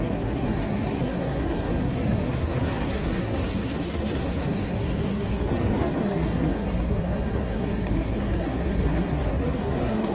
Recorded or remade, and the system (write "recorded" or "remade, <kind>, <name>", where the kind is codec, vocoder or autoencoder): remade, codec, SNAC